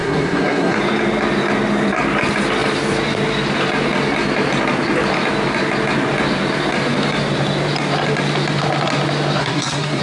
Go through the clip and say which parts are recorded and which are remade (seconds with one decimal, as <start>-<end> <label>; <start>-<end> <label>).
0.0-0.8 remade; 0.8-9.4 recorded; 9.4-10.0 remade